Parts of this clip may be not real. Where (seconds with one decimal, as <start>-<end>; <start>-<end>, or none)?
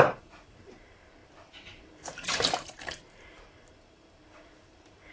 0.0-5.1